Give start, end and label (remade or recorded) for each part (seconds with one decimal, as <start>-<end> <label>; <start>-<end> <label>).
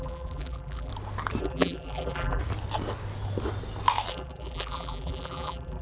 0.0-0.9 remade; 0.9-1.4 recorded; 1.4-2.4 remade; 2.4-4.1 recorded; 4.1-5.8 remade